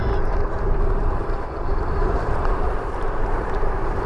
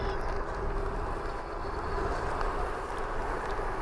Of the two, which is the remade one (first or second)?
first